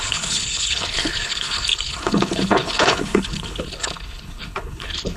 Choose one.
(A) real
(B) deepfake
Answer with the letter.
B